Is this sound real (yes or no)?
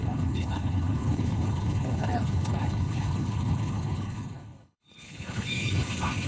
no